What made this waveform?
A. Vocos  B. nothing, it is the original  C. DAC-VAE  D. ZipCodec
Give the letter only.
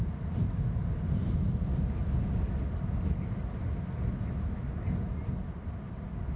B